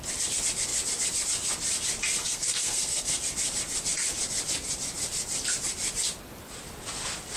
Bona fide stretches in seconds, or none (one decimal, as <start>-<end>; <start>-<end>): 0.0-2.2; 3.2-7.4